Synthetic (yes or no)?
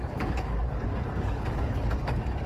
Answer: yes